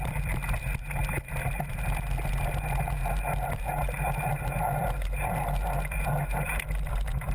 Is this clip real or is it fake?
real